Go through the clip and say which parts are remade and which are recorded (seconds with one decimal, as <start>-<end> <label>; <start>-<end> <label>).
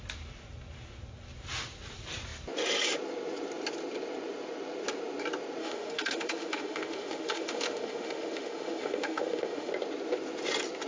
0.0-5.6 recorded; 5.6-9.7 remade; 9.7-10.9 recorded